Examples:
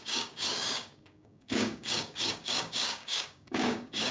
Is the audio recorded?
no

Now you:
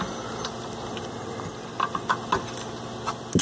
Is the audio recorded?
yes